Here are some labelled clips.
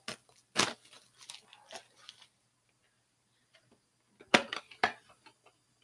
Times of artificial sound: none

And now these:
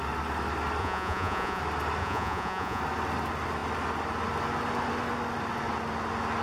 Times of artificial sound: 0.8-1.6 (vocoder, Vocos); 2.0-2.8

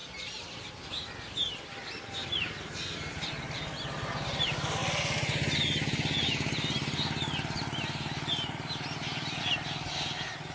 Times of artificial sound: none

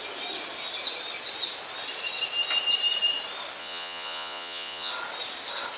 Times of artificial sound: 3.6-4.9 (vocoder, Vocos)

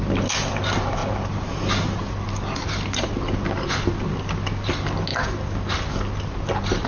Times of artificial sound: none

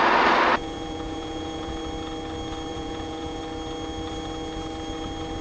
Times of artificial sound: 0.6-1.8 (vocoder, Vocos); 2.7-3.4